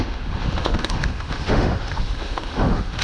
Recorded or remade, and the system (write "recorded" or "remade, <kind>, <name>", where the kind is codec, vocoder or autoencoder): remade, autoencoder, DAC-VAE